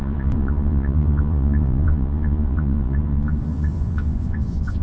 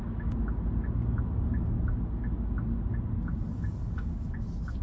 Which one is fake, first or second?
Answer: first